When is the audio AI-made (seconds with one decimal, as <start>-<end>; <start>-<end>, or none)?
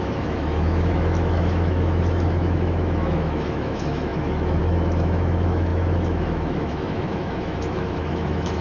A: 0.0-8.6